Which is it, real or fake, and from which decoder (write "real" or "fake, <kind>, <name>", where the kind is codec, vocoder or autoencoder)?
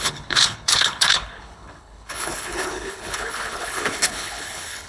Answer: fake, codec, HILCodec